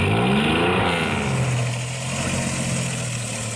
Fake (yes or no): no